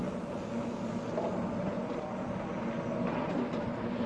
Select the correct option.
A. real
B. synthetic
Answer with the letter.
A